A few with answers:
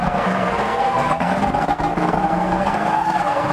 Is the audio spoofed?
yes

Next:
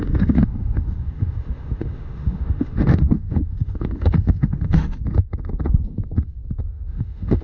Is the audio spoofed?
yes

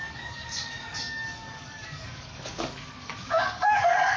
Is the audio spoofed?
yes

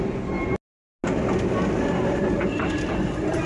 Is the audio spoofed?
no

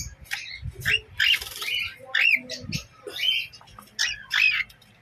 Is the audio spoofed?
no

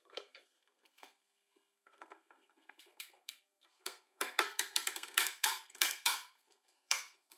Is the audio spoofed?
yes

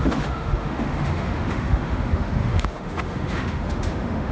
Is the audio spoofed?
yes